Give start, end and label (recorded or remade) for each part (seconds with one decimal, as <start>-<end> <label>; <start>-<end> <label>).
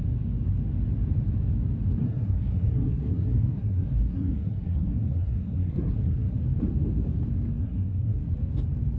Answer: 0.0-2.0 recorded; 2.0-6.4 remade; 6.4-7.6 recorded; 7.6-8.3 remade; 8.3-9.0 recorded